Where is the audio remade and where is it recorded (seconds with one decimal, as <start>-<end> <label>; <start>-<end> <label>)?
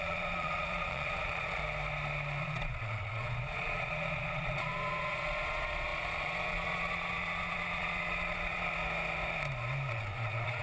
0.0-1.6 remade; 1.6-2.4 recorded; 2.4-8.8 remade; 8.8-9.9 recorded; 9.9-10.6 remade